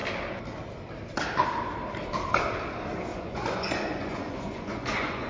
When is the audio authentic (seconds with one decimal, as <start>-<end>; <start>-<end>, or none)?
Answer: 0.0-3.1